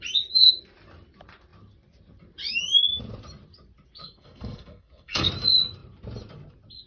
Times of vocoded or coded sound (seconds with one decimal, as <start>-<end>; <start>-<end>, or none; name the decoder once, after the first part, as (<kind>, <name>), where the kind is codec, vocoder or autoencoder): 4.0-5.3 (codec, SNAC)